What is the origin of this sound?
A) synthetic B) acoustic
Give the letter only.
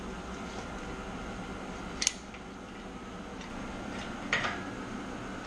B